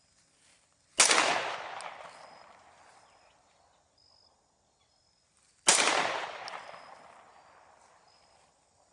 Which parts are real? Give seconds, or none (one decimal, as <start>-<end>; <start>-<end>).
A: 0.0-8.9